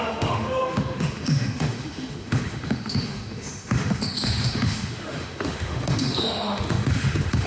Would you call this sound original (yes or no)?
no